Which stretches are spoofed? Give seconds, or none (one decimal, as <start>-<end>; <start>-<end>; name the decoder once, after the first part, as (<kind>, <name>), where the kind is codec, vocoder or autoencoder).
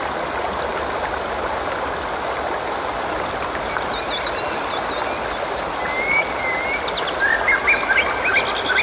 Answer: none